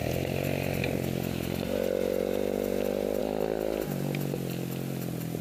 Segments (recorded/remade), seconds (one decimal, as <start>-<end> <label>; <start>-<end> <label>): 0.0-5.4 recorded